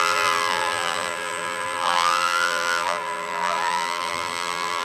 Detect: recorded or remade remade